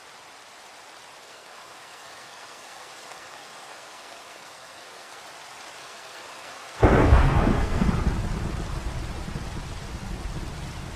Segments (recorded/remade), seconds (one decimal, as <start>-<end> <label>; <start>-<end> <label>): 0.0-1.2 recorded; 1.2-5.2 remade; 5.2-5.8 recorded; 5.8-7.9 remade; 7.9-11.0 recorded